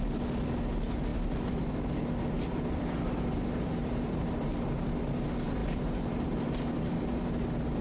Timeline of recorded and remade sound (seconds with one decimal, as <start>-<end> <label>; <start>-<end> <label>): 0.0-1.1 recorded; 1.1-4.6 remade; 4.6-5.6 recorded; 5.6-6.8 remade; 6.8-7.8 recorded